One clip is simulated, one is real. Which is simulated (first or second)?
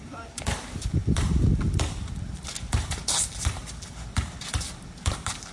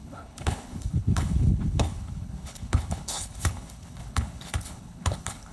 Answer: second